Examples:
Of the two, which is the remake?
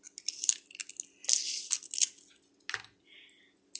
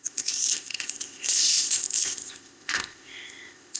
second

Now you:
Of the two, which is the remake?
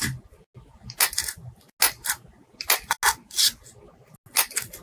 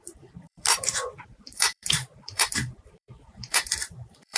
second